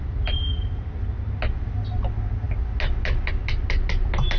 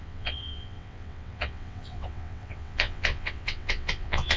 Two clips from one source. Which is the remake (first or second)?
second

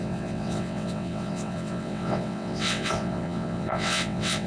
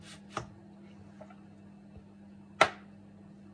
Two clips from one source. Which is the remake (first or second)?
first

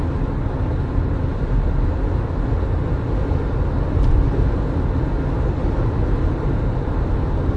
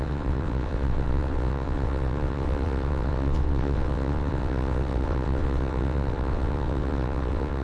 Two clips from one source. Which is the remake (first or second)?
second